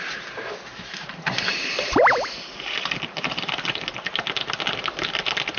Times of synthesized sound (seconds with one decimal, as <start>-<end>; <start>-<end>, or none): none